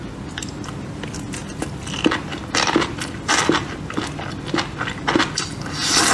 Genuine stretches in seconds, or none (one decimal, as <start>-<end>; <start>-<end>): 0.0-6.1